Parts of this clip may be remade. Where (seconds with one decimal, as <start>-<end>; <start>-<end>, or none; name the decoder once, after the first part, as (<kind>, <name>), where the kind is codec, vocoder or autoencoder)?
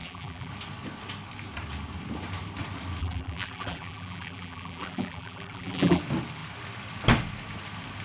0.0-0.5 (vocoder, BigVGAN v2); 3.0-6.0